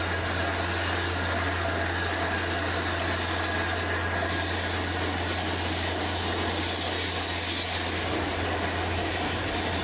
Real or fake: real